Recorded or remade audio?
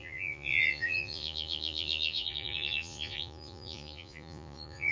remade